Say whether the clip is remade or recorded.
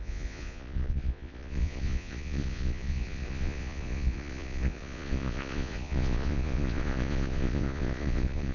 remade